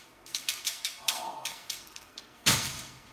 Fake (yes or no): yes